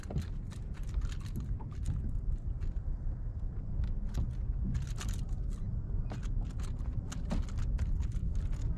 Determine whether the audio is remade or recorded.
recorded